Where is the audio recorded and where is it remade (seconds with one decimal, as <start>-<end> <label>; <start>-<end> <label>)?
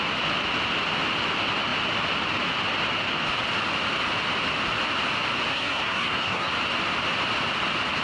0.0-5.5 recorded; 5.5-6.5 remade; 6.5-8.0 recorded